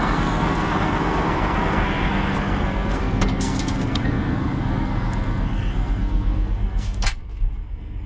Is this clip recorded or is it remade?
remade